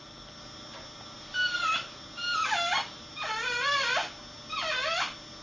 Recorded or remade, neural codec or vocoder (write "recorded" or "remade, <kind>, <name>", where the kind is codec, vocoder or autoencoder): recorded